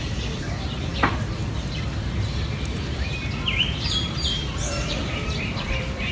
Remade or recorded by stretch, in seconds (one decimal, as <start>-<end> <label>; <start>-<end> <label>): 0.0-0.9 remade; 0.9-2.2 recorded; 2.2-6.1 remade